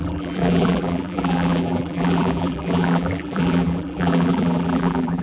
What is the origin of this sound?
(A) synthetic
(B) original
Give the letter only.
A